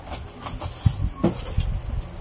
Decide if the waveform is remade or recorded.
recorded